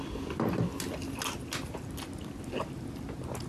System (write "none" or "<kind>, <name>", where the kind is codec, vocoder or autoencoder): none